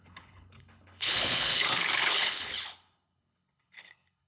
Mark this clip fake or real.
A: fake